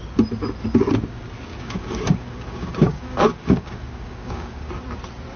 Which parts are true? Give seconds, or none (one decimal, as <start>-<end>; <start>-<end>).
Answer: 0.0-1.5; 4.7-5.4